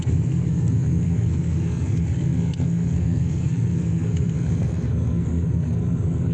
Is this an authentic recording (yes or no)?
no